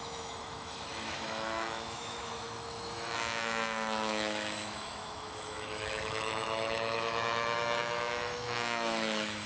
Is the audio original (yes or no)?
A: no